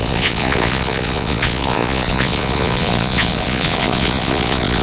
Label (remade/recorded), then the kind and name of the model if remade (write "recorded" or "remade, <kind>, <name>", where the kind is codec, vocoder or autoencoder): remade, vocoder, Vocos